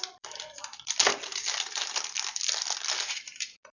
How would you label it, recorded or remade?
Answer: remade